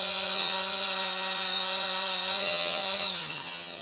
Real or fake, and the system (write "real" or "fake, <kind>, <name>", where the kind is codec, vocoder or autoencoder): fake, vocoder, HiFi-GAN